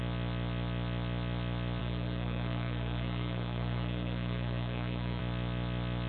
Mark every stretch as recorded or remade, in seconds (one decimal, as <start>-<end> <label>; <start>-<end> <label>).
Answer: 0.0-1.8 recorded; 1.8-5.2 remade; 5.2-6.1 recorded